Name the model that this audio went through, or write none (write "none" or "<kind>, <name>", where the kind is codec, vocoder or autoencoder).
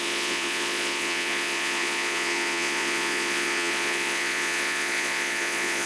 vocoder, Vocos